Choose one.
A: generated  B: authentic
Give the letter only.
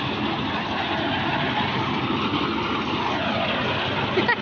B